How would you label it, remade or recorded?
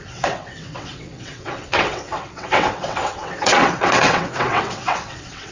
remade